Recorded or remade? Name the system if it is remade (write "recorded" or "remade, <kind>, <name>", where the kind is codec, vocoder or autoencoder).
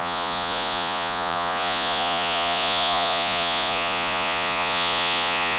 remade, vocoder, Vocos